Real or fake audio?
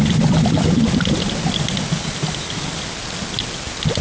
real